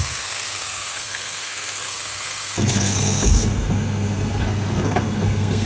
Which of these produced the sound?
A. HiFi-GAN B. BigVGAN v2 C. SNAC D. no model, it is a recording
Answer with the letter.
C